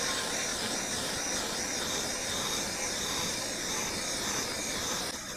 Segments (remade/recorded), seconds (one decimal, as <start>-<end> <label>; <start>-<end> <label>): 0.0-5.4 recorded